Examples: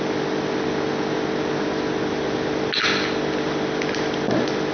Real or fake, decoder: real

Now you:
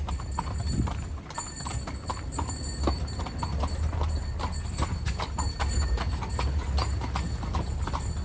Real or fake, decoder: real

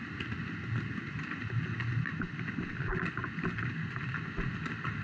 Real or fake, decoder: real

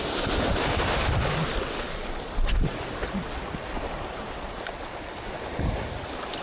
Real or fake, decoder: real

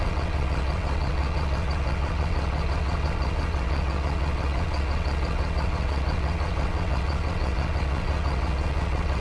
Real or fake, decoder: fake, vocoder, WaveNeXt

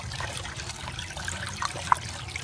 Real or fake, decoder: real